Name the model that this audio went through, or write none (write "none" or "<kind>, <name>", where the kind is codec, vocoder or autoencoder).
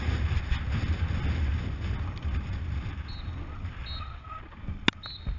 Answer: none